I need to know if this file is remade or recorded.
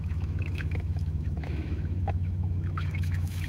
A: remade